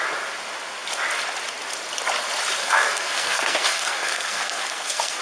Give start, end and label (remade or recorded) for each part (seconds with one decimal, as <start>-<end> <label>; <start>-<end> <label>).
0.0-2.6 recorded; 2.6-5.2 remade